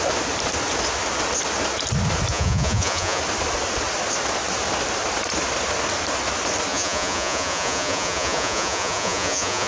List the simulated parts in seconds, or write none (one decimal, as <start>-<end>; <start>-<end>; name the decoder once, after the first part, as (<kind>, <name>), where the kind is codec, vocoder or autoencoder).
2.3-3.2 (vocoder, Vocos); 6.7-9.7